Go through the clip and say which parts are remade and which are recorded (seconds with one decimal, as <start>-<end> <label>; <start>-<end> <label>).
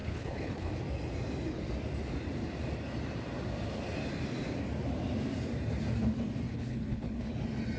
0.0-0.7 remade; 0.7-6.5 recorded; 6.5-7.3 remade; 7.3-7.8 recorded